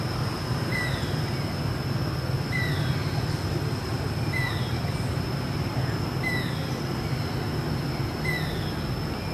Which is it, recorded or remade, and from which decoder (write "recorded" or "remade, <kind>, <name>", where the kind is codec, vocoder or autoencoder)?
recorded